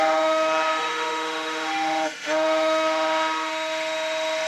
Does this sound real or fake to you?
fake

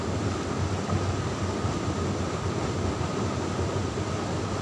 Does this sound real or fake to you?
real